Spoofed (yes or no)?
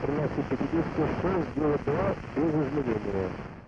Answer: no